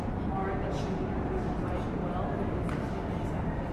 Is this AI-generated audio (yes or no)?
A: no